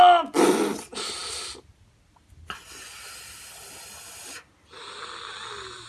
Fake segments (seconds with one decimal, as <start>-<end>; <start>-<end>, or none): none